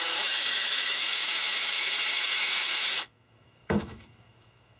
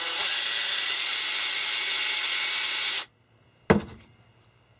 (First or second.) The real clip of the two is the second